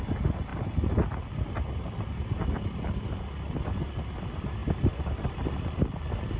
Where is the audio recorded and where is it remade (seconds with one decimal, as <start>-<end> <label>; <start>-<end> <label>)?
0.0-4.6 recorded; 4.6-5.8 remade; 5.8-6.4 recorded